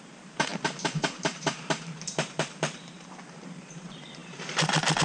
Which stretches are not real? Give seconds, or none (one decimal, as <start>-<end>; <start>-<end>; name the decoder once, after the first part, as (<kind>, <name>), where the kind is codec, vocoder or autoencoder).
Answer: 0.0-5.0 (vocoder, BigVGAN v2)